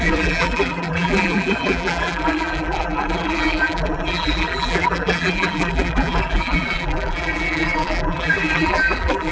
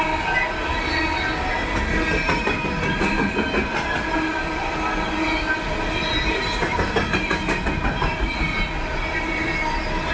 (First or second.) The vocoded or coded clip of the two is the first